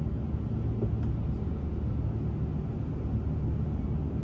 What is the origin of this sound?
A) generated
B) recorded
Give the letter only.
B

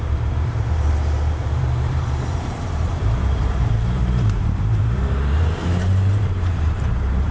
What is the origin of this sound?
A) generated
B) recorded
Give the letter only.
A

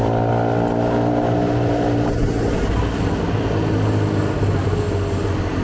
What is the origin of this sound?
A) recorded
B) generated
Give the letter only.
A